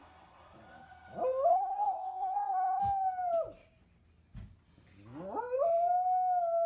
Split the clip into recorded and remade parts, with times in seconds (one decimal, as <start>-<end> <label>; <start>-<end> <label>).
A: 0.0-1.5 recorded; 1.5-2.8 remade; 2.8-6.7 recorded